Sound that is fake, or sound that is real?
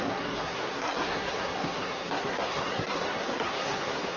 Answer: fake